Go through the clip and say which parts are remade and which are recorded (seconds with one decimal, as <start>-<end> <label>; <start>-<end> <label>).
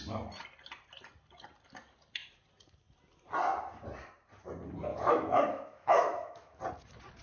0.0-4.9 recorded; 4.9-6.6 remade; 6.6-7.2 recorded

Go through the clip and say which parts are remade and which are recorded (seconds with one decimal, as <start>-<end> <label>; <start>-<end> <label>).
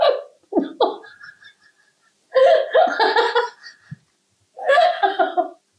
0.0-4.6 recorded; 4.6-5.2 remade; 5.2-5.8 recorded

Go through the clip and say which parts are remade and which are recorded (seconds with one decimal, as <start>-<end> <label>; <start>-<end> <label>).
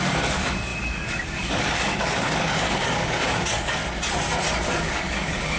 0.0-3.8 remade; 3.8-4.7 recorded; 4.7-5.6 remade